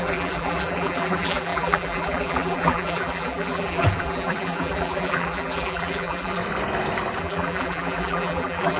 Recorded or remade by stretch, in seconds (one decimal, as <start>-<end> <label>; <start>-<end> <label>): 0.0-6.4 remade; 6.4-7.2 recorded; 7.2-8.8 remade